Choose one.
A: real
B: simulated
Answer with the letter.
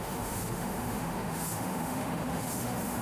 B